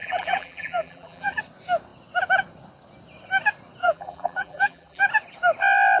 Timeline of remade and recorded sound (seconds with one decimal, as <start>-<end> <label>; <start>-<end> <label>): 0.0-1.4 remade; 1.4-3.8 recorded; 3.8-5.0 remade; 5.0-6.0 recorded